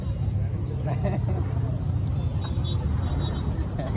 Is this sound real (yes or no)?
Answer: no